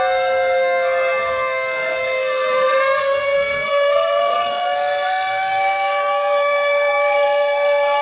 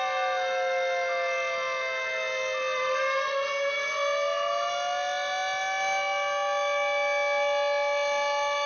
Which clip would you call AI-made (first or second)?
first